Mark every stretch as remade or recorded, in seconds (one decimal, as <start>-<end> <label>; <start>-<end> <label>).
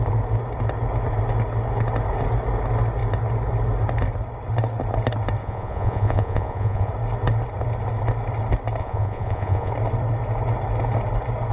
0.0-5.4 recorded; 5.4-6.9 remade; 6.9-8.8 recorded; 8.8-9.7 remade; 9.7-11.5 recorded